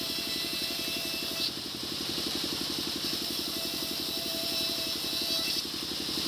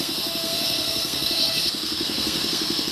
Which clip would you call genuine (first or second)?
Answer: first